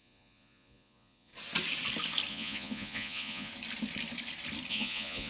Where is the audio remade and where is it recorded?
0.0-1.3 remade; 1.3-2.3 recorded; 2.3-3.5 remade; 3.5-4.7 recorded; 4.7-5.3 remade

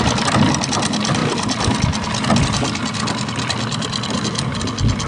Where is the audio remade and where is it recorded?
0.0-5.1 recorded

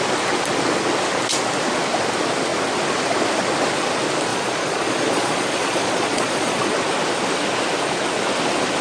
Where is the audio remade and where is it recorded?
0.0-4.3 recorded; 4.3-6.7 remade; 6.7-8.8 recorded

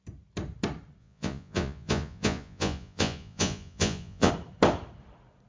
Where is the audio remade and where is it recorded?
0.0-1.0 recorded; 1.0-4.3 remade; 4.3-5.5 recorded

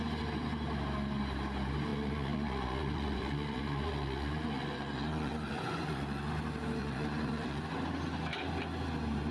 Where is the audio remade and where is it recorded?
0.0-1.9 recorded; 1.9-6.3 remade; 6.3-6.8 recorded; 6.8-7.6 remade; 7.6-9.3 recorded

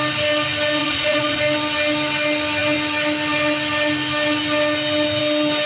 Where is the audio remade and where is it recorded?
0.0-0.8 recorded; 0.8-1.4 remade; 1.4-5.7 recorded